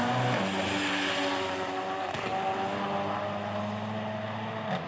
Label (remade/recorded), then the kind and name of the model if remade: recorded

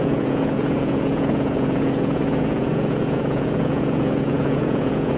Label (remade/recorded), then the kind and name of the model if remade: remade, vocoder, Vocos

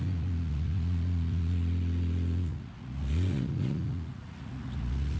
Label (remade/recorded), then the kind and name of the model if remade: remade, vocoder, Vocos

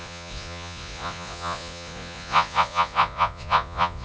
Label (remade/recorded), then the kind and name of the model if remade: remade, vocoder, Vocos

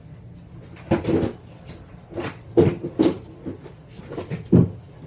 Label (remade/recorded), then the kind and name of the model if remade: recorded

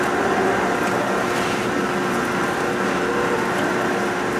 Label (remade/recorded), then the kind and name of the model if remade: recorded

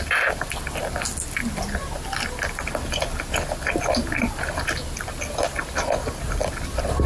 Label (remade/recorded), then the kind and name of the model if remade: recorded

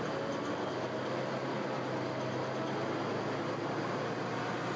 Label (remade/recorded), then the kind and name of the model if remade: recorded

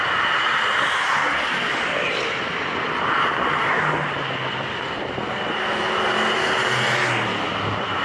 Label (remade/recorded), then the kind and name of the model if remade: recorded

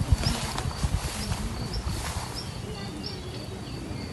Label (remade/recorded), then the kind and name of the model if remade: recorded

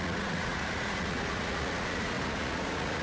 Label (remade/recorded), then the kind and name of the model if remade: remade, vocoder, Vocos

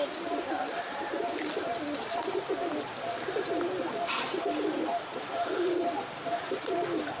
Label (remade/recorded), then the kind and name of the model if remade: recorded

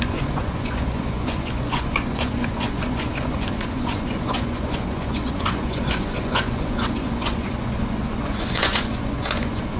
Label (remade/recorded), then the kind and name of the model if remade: remade, vocoder, Vocos